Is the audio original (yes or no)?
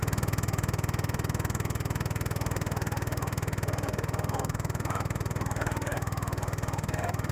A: no